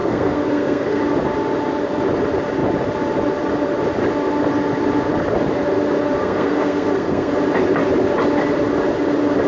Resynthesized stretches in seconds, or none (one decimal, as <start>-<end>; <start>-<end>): 0.0-1.0; 6.2-7.3